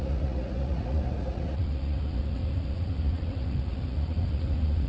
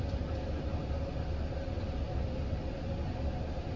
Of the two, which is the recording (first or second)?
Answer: second